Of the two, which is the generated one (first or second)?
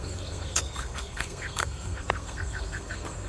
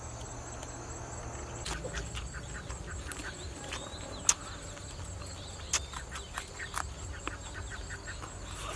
first